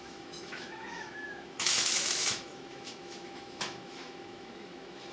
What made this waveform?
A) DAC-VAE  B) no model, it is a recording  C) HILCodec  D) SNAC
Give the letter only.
A